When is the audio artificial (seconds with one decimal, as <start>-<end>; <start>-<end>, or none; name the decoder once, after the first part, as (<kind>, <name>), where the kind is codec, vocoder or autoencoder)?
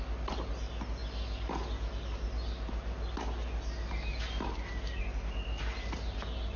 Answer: none